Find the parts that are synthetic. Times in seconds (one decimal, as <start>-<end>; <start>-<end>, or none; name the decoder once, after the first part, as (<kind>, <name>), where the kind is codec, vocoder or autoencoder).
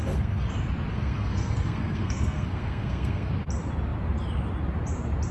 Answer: 0.0-0.5 (codec, SNAC); 0.9-3.3